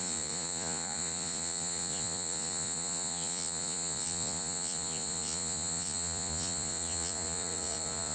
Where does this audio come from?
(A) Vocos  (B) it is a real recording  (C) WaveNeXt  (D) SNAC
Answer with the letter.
A